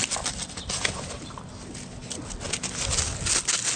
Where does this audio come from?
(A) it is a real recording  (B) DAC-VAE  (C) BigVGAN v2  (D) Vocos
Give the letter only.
A